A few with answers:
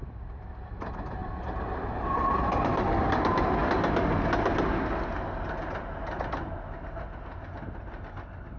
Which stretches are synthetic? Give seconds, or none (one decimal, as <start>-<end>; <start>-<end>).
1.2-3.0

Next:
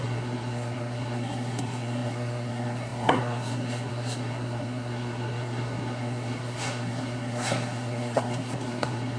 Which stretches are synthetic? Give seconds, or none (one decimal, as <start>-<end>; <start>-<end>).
0.0-9.2

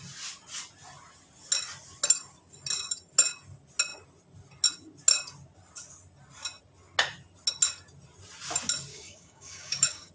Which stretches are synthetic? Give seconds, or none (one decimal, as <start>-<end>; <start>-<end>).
8.9-10.1

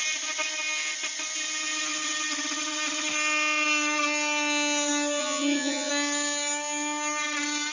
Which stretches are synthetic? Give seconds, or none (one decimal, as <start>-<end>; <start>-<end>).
5.2-5.9

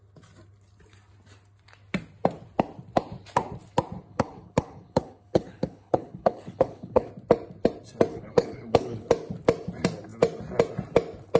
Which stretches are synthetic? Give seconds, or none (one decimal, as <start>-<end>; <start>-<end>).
4.1-7.1; 8.1-9.1